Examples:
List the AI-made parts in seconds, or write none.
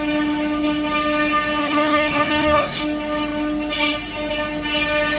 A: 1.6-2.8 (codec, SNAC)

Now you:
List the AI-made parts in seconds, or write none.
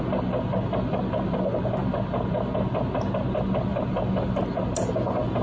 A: none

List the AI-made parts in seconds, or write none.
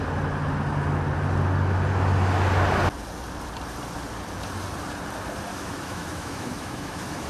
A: 5.5-7.3 (autoencoder, DAC-VAE)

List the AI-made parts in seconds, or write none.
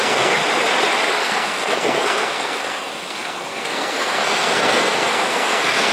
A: 0.0-0.4 (codec, SNAC); 1.2-5.9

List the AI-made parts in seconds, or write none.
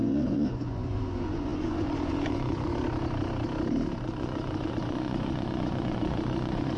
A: 0.0-2.8 (vocoder, Vocos); 4.0-6.8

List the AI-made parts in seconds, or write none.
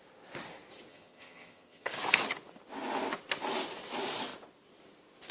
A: 0.9-1.9 (vocoder, HiFi-GAN)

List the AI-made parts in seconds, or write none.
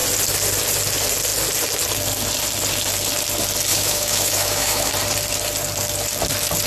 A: 3.7-4.9 (autoencoder, DAC-VAE)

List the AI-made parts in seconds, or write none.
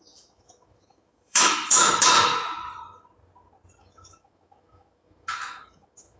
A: 0.0-2.3 (autoencoder, DAC-VAE); 3.8-6.2